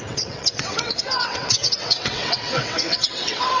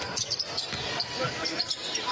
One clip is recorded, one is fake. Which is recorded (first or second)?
second